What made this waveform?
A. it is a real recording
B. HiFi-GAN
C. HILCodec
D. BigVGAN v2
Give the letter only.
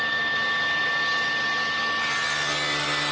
A